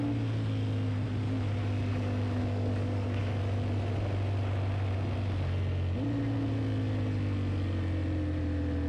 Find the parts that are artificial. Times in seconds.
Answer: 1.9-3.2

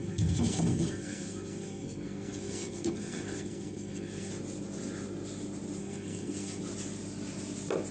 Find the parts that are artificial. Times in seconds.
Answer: 0.0-4.3; 5.8-6.6

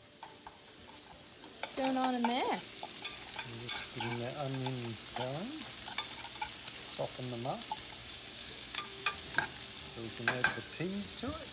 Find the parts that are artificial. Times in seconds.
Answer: 8.0-9.1